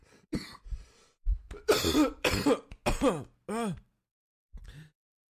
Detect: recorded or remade recorded